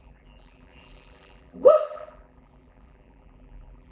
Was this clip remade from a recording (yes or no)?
yes